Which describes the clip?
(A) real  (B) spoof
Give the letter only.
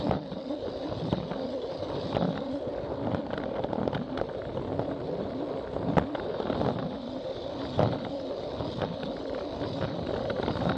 A